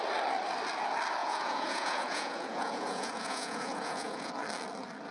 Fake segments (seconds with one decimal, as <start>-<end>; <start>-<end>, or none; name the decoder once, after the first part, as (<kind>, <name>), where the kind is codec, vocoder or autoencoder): 1.2-4.3 (vocoder, Vocos)